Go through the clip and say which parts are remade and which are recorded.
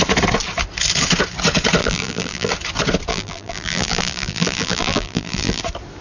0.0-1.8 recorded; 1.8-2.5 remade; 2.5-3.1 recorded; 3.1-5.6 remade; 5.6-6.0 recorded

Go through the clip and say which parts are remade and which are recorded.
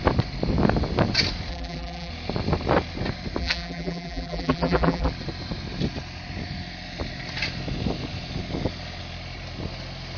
0.0-1.5 recorded; 1.5-2.1 remade; 2.1-3.4 recorded; 3.4-5.1 remade; 5.1-10.2 recorded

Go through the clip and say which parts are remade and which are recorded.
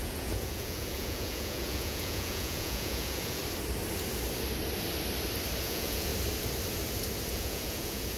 0.0-3.4 remade; 3.4-5.6 recorded; 5.6-6.1 remade; 6.1-7.3 recorded; 7.3-8.2 remade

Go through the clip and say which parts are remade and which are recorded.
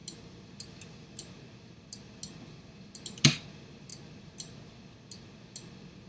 0.0-6.1 recorded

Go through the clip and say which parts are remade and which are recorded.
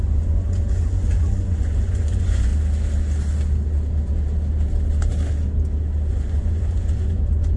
0.0-2.5 remade; 2.5-6.1 recorded; 6.1-7.6 remade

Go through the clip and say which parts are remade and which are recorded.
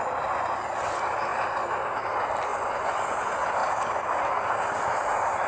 0.0-2.5 recorded; 2.5-3.1 remade; 3.1-5.5 recorded